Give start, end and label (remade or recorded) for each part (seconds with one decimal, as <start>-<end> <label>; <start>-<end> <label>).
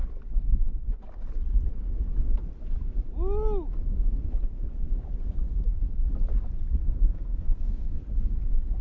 0.0-6.8 recorded; 6.8-8.0 remade; 8.0-8.8 recorded